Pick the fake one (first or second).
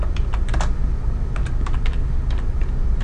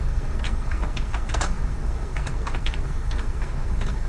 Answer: second